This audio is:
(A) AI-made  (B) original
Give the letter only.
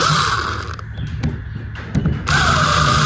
B